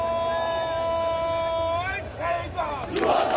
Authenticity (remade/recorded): recorded